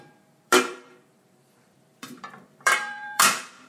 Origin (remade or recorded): remade